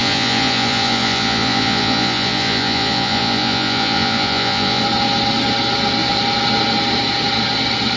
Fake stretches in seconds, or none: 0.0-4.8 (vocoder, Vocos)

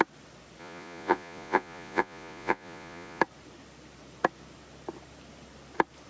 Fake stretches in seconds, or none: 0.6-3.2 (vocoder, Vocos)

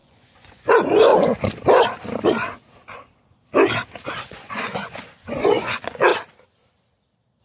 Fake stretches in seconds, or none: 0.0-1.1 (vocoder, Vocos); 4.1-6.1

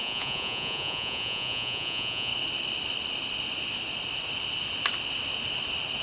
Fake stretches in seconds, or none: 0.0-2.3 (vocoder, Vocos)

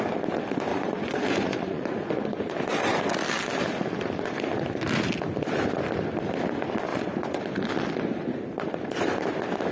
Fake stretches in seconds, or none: 0.7-2.4 (vocoder, Vocos); 6.9-7.4

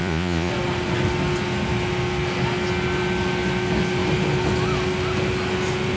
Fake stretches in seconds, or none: 0.0-0.5 (vocoder, Vocos)

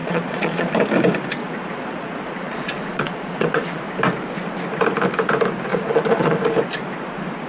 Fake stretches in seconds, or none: 0.0-0.7 (vocoder, Vocos); 1.4-3.8; 5.7-6.4